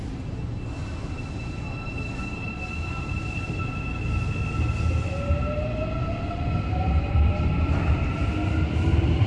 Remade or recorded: recorded